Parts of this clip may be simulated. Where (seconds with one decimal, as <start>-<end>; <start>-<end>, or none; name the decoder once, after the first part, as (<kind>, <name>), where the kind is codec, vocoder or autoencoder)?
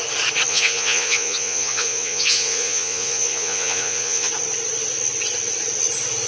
0.5-4.3 (vocoder, Vocos)